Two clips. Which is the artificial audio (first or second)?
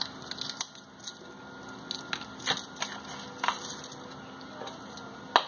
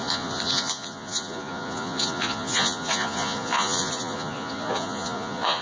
second